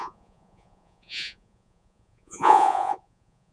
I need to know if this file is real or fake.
fake